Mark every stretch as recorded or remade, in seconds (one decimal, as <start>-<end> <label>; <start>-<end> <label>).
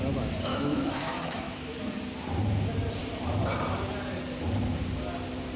0.0-0.5 recorded; 0.5-1.8 remade; 1.8-5.6 recorded